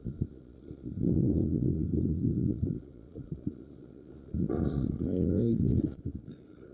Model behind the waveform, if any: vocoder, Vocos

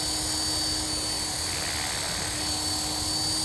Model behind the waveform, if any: none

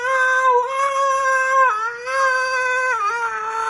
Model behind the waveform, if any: none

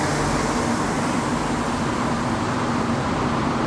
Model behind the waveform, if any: none